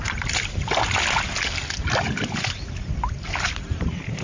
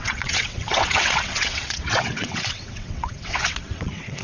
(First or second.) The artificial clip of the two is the second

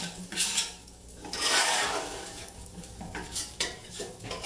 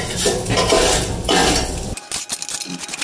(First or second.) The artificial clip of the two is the first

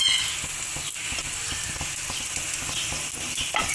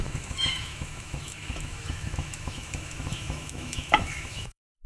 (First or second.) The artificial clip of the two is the second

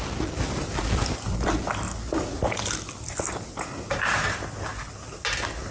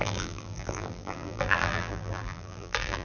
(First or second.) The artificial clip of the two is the second